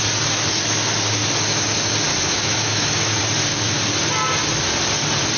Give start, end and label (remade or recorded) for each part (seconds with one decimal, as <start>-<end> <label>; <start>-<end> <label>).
0.0-2.1 recorded; 2.1-3.2 remade; 3.2-5.4 recorded